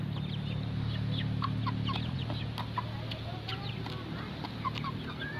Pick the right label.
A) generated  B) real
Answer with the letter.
B